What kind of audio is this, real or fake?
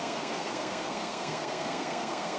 fake